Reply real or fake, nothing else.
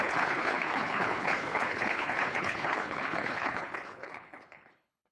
fake